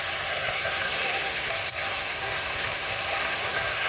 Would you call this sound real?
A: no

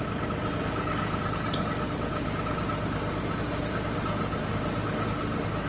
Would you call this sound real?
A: yes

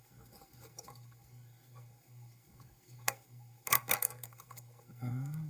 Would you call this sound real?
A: no